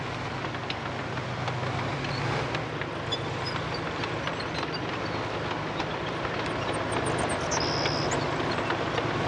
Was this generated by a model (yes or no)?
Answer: no